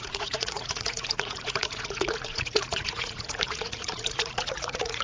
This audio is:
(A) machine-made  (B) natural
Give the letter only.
A